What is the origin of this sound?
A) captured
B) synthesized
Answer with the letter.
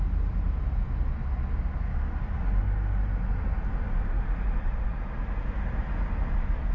A